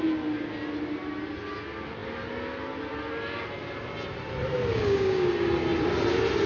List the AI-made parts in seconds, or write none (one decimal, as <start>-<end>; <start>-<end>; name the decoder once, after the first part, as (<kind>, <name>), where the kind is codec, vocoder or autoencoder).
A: 4.7-5.3 (codec, DAC)